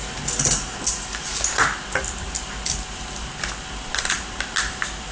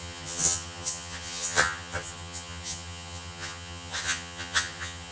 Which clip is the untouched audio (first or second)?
first